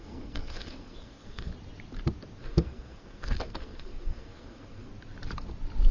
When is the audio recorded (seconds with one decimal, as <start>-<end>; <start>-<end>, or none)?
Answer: 1.5-2.4; 4.9-5.9